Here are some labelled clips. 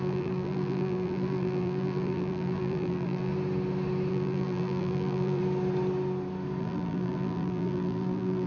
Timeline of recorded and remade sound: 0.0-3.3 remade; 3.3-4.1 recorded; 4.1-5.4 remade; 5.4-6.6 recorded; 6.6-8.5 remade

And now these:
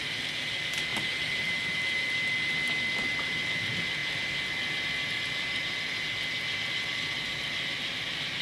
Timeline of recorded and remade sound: 0.0-0.9 recorded; 0.9-1.5 remade; 1.5-8.4 recorded

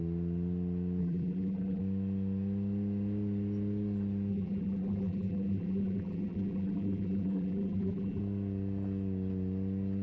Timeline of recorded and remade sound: 0.0-1.0 recorded; 1.0-1.8 remade; 1.8-4.3 recorded; 4.3-8.2 remade; 8.2-10.0 recorded

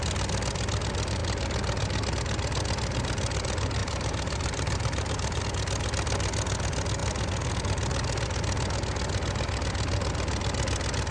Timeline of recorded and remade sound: 0.0-3.8 recorded; 3.8-5.4 remade; 5.4-11.1 recorded

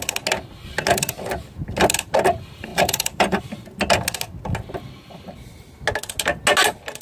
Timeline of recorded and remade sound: 0.0-2.7 recorded; 2.7-3.4 remade; 3.4-7.0 recorded

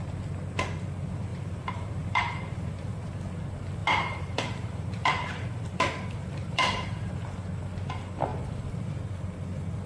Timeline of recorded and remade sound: 0.0-1.3 recorded; 1.3-3.1 remade; 3.1-3.8 recorded; 3.8-7.1 remade; 7.1-8.3 recorded; 8.3-8.9 remade; 8.9-9.9 recorded

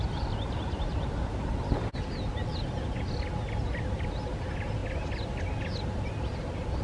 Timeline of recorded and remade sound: 0.0-4.8 recorded; 4.8-5.4 remade; 5.4-6.8 recorded